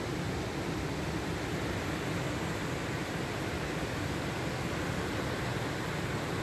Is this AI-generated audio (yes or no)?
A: no